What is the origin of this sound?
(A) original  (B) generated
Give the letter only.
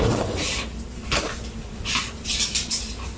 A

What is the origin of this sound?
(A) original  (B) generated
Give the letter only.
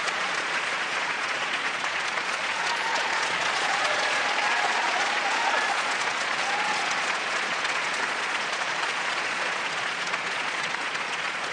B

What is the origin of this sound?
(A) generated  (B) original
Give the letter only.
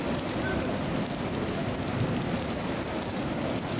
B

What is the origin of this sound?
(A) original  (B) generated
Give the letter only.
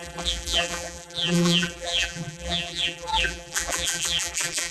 B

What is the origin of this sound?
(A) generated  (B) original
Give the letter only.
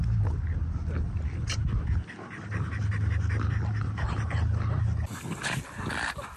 B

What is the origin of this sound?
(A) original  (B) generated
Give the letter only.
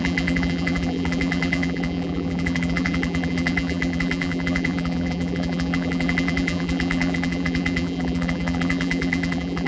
B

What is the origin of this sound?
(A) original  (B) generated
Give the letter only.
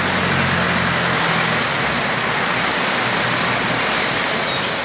A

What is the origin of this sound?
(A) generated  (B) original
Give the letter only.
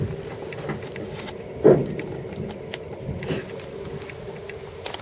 B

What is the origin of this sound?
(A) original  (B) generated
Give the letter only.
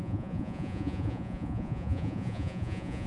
B